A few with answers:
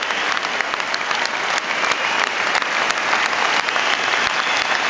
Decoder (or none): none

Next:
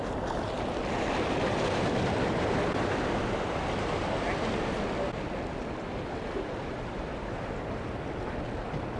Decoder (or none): none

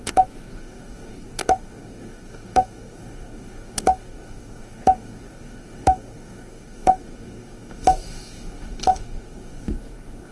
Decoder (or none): codec, DAC